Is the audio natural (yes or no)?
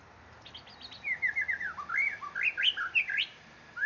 yes